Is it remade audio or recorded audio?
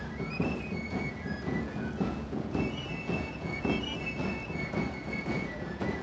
remade